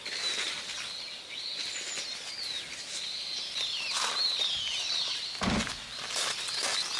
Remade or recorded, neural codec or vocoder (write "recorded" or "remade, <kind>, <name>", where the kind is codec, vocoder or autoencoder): recorded